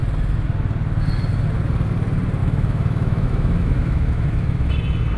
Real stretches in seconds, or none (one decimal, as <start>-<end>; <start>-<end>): 0.0-2.4; 4.7-5.2